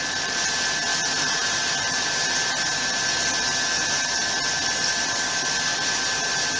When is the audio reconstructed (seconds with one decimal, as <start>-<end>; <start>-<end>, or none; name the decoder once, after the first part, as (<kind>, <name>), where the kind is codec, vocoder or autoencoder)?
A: none